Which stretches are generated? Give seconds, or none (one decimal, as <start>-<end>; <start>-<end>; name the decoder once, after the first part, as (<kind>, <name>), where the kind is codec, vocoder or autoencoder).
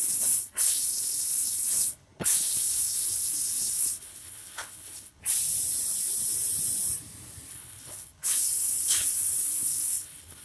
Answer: 0.0-5.2 (codec, HILCodec); 7.5-10.4